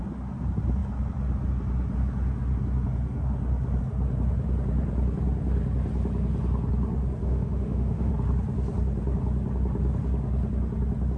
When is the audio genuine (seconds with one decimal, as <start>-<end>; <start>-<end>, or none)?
0.0-7.2; 8.1-11.2